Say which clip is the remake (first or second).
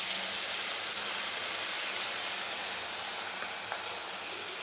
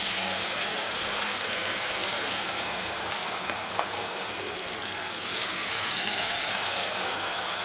second